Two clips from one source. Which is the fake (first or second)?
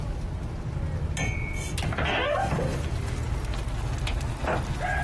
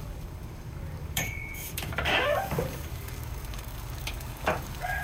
second